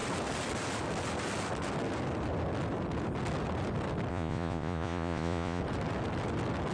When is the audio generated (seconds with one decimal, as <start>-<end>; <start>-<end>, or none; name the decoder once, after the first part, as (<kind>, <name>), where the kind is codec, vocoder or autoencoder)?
4.1-5.6 (vocoder, Vocos)